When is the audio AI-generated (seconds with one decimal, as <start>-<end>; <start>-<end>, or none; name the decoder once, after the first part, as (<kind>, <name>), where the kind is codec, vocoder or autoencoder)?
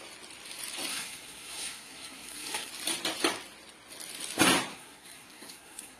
0.9-2.7 (codec, SNAC); 4.7-6.0